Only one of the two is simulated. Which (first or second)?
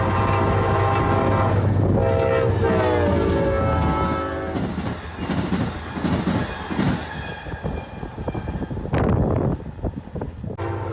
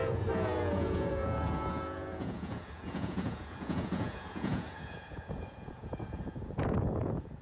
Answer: second